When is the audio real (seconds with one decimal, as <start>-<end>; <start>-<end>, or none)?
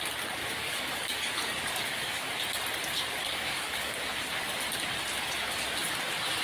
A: 0.0-0.6; 2.3-3.2; 4.1-6.4